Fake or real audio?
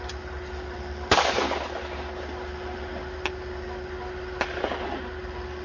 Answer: real